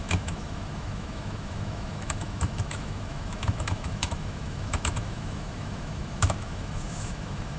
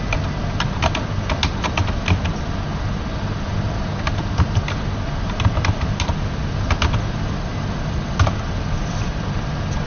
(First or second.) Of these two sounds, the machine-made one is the first